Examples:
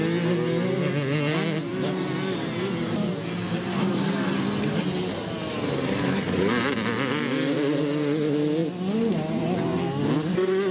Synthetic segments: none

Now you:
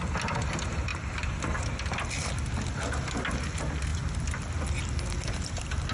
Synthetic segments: 0.9-1.7 (vocoder, BigVGAN v2)